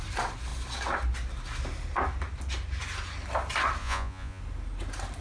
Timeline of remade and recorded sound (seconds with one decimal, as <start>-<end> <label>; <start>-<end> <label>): 0.0-3.8 recorded; 3.8-4.4 remade; 4.4-5.2 recorded